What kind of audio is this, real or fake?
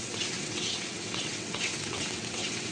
fake